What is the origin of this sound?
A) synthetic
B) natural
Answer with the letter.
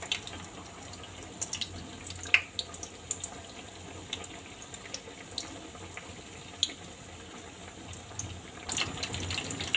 B